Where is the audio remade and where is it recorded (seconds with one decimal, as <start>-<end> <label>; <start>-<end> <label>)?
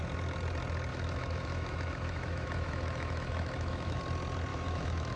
0.0-0.9 recorded; 0.9-4.0 remade; 4.0-4.5 recorded; 4.5-5.2 remade